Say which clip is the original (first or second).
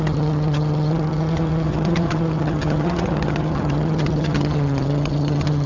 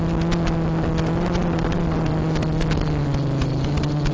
second